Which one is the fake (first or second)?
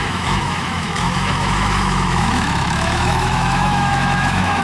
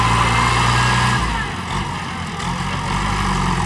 first